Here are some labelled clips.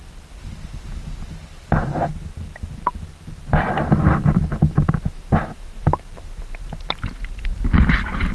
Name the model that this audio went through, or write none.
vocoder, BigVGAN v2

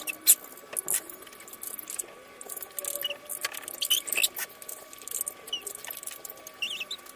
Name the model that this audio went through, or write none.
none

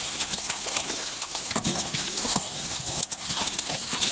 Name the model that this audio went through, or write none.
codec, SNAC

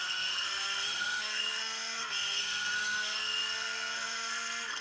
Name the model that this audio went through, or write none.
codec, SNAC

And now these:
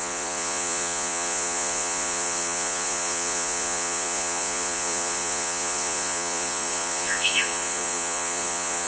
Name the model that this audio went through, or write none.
vocoder, Vocos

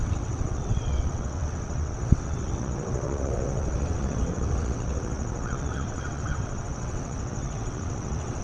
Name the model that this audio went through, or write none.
vocoder, WaveNeXt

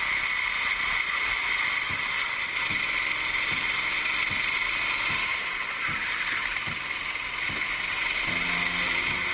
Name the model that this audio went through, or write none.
none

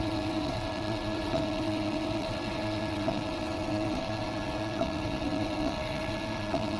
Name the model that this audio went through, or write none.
vocoder, WaveNeXt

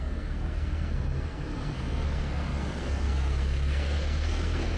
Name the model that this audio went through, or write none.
codec, SNAC